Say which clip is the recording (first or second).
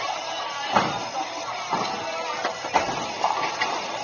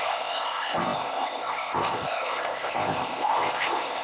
first